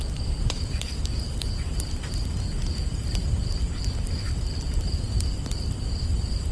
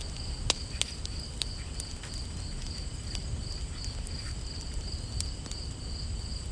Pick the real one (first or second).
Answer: second